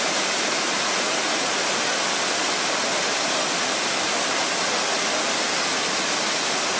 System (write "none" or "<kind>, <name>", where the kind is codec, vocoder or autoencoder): none